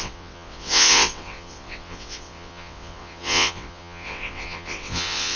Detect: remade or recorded remade